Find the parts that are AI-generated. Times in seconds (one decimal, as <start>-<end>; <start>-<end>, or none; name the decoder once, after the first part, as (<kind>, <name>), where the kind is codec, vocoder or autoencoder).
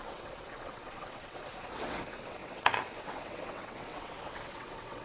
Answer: 0.0-5.0 (vocoder, WaveNeXt)